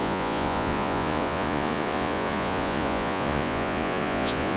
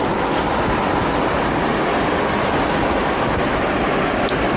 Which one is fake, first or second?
first